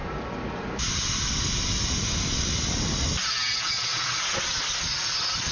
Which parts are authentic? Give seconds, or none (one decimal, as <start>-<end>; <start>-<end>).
0.0-5.5